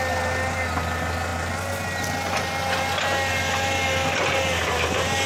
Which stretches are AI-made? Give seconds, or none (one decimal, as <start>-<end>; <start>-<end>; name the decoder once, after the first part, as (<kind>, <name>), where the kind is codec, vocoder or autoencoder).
none

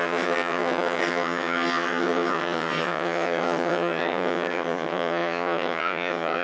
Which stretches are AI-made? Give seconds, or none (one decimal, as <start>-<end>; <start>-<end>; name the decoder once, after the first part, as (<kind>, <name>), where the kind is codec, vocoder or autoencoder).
0.0-6.4 (vocoder, HiFi-GAN)

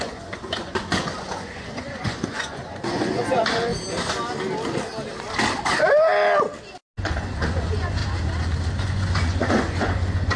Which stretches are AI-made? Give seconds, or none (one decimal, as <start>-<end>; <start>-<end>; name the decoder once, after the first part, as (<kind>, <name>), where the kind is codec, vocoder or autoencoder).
0.0-3.7 (vocoder, Vocos); 7.0-8.0; 8.8-10.4

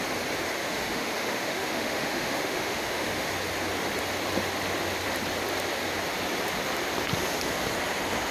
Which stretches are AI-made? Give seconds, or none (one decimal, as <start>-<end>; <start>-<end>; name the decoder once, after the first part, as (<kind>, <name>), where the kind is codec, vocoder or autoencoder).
0.6-3.3 (autoencoder, DAC-VAE)

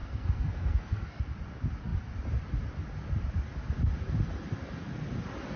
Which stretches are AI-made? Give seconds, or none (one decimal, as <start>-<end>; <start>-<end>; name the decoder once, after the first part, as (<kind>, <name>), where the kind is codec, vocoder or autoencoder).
0.0-1.2 (codec, SNAC)